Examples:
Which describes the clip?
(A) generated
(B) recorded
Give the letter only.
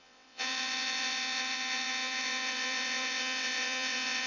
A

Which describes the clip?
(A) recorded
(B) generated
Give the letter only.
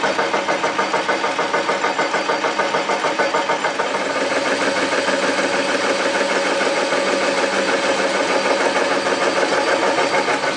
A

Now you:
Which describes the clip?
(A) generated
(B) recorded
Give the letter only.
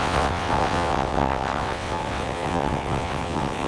A